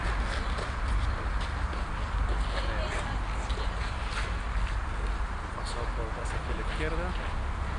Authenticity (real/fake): real